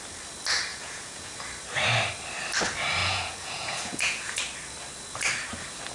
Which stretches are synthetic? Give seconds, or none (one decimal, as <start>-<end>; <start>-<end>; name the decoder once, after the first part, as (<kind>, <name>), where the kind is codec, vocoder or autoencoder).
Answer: 0.7-1.4 (vocoder, Vocos); 3.0-4.4